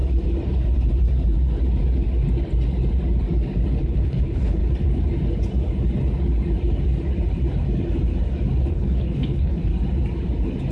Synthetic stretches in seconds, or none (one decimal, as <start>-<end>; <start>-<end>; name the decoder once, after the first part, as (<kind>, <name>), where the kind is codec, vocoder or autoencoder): 3.8-4.6 (codec, HILCodec); 8.7-9.7